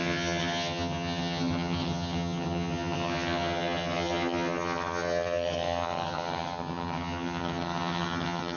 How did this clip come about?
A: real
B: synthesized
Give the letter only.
B